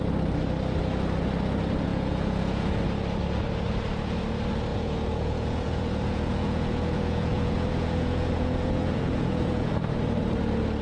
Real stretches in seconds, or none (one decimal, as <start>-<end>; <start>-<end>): 0.0-1.9; 2.8-4.7; 9.7-10.8